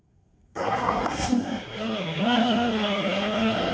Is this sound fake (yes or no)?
yes